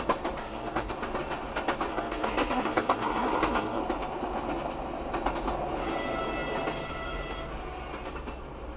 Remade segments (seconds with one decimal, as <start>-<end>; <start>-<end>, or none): 0.4-0.9; 1.9-3.8